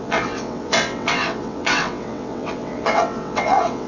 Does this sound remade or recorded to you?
remade